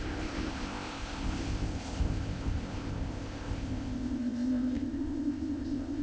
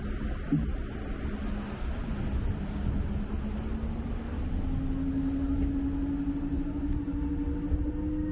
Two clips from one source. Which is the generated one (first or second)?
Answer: first